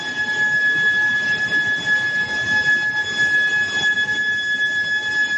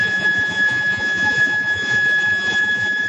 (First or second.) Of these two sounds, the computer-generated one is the second